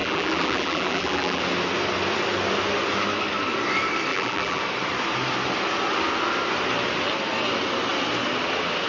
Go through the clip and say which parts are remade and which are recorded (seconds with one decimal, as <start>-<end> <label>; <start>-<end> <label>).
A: 0.0-1.4 remade; 1.4-4.1 recorded; 4.1-4.6 remade; 4.6-8.9 recorded